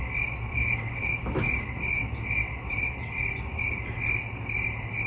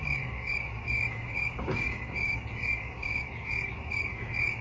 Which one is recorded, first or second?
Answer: first